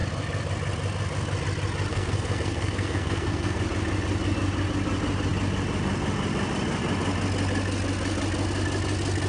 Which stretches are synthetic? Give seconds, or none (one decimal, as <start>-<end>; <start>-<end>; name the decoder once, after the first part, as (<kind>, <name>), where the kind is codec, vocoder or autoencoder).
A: 1.9-3.6 (codec, SNAC)